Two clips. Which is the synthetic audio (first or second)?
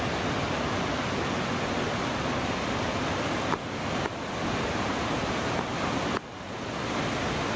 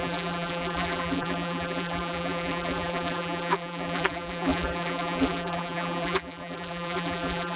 second